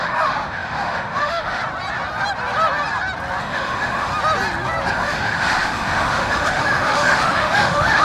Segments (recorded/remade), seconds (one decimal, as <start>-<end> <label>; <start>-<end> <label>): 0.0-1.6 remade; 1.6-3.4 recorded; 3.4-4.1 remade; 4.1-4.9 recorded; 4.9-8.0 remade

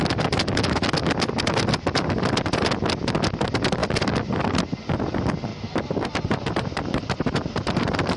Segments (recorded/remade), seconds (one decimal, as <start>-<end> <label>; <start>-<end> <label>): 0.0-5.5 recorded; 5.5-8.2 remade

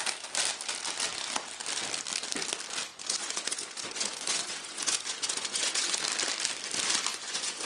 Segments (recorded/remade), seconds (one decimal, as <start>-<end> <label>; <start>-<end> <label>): 0.0-2.9 recorded; 2.9-6.0 remade; 6.0-7.1 recorded; 7.1-7.7 remade

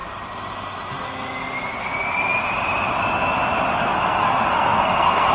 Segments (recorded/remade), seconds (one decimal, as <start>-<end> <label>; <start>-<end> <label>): 0.0-3.8 recorded; 3.8-5.3 remade

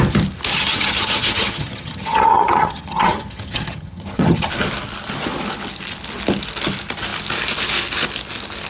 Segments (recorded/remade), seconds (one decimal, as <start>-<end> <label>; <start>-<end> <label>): 0.0-0.5 recorded; 0.5-4.5 remade; 4.5-8.7 recorded

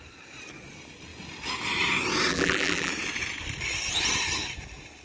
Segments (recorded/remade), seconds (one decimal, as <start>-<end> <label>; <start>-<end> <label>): 0.0-2.3 recorded; 2.3-2.9 remade; 2.9-5.0 recorded